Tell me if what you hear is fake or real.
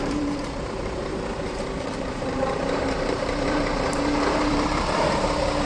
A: fake